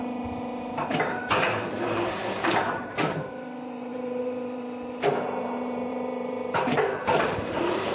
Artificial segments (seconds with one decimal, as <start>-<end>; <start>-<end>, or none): 0.0-1.2; 1.7-7.9